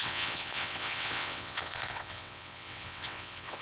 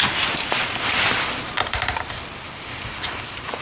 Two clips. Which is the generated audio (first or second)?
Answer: first